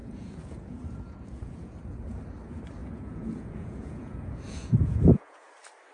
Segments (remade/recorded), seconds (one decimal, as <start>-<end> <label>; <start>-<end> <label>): 0.0-2.2 remade; 2.2-2.8 recorded; 2.8-5.5 remade; 5.5-5.9 recorded